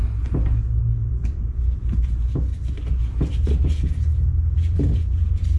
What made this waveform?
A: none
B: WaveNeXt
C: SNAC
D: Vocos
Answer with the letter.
A